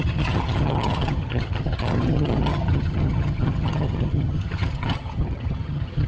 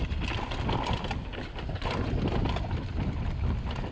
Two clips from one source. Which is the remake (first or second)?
first